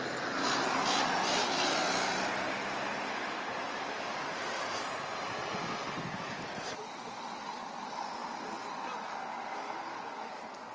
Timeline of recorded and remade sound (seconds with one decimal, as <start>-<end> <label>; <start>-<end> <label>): 0.0-10.7 recorded